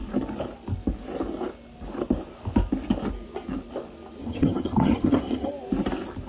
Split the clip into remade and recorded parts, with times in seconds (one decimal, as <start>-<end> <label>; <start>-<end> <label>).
0.0-4.2 recorded; 4.2-5.5 remade; 5.5-6.3 recorded